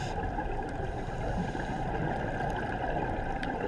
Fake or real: real